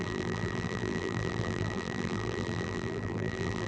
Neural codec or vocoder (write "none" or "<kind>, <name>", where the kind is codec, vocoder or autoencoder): vocoder, BigVGAN v2